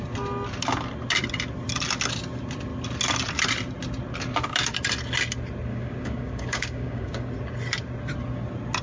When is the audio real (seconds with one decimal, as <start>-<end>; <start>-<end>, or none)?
0.0-5.7; 7.3-8.8

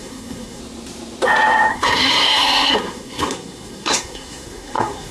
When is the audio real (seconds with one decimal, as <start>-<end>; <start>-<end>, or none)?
0.6-1.7

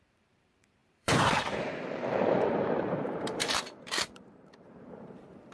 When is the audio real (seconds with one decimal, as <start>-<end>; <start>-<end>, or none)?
none